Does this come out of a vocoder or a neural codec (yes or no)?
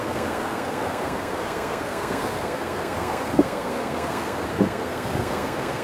yes